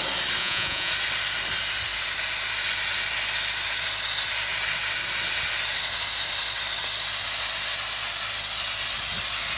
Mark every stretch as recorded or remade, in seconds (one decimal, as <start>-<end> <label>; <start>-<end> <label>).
0.0-0.4 recorded; 0.4-0.9 remade; 0.9-9.6 recorded